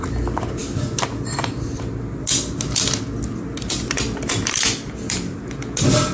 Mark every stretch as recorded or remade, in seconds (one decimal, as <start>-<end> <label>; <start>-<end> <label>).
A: 0.0-6.1 recorded